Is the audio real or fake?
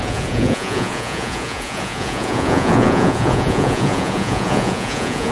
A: fake